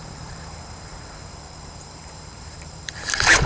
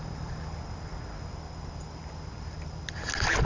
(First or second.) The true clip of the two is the second